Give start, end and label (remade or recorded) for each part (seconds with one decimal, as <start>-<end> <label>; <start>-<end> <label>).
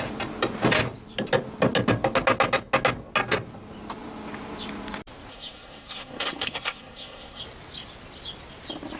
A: 0.0-5.3 recorded; 5.3-7.4 remade; 7.4-9.0 recorded